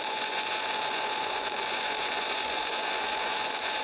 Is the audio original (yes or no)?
no